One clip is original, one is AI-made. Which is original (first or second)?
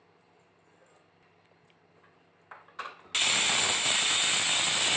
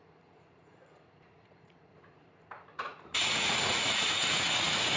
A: first